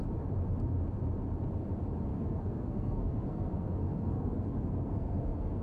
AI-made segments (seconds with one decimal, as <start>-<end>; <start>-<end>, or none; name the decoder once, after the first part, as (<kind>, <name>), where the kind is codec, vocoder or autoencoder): 2.1-5.6 (codec, SNAC)